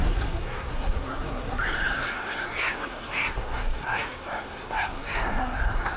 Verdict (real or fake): fake